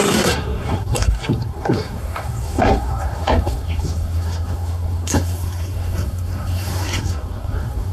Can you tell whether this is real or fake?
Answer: fake